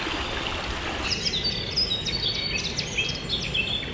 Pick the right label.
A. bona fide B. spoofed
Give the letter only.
A